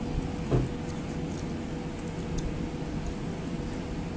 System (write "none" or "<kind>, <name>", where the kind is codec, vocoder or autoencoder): none